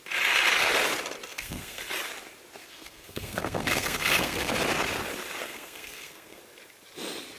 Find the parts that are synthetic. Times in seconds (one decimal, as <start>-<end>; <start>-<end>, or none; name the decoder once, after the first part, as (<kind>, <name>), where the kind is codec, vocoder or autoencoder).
1.3-1.8 (codec, SNAC); 2.6-4.5; 5.4-6.4